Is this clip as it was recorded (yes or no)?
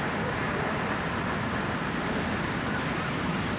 yes